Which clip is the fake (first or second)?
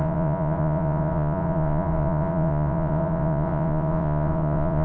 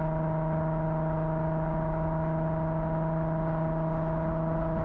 first